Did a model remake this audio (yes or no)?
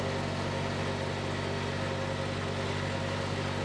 no